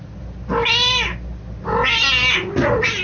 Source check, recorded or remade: recorded